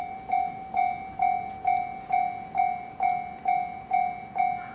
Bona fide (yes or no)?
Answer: yes